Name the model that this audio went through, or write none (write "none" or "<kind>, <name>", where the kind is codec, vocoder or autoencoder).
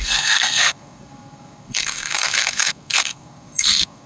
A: codec, SNAC